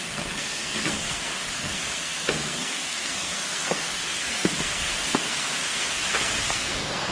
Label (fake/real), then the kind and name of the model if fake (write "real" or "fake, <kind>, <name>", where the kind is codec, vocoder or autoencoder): fake, codec, SNAC